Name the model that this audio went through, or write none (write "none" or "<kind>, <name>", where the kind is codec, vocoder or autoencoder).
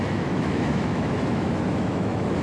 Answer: autoencoder, DAC-VAE